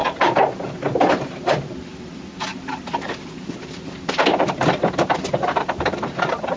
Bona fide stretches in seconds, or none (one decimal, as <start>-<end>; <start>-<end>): 0.0-1.8